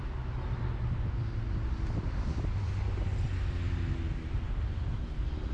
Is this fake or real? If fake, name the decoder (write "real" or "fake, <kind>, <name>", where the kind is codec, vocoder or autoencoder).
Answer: real